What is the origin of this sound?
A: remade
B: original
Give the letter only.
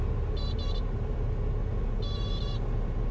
B